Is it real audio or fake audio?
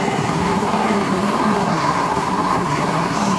fake